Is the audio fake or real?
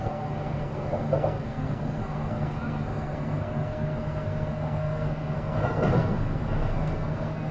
fake